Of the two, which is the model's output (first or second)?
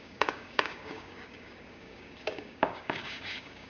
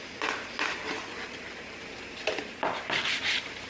first